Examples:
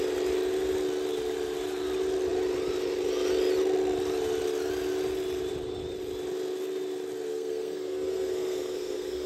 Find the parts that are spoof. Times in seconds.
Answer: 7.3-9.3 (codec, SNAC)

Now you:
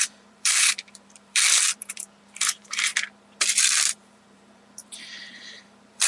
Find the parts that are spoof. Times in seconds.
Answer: 0.0-2.9 (vocoder, BigVGAN v2); 3.9-6.1

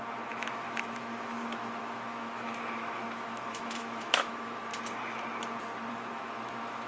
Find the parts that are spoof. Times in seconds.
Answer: 0.0-4.7 (autoencoder, DAC-VAE); 5.9-6.9

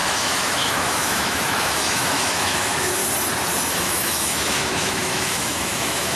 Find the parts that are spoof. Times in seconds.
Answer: 0.0-3.0 (autoencoder, DAC-VAE); 3.7-6.2

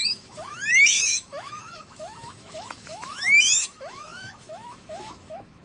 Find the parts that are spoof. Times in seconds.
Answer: 0.0-5.6 (autoencoder, DAC-VAE)